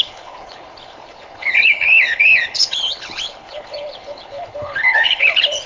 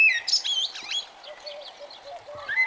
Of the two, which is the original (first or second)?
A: second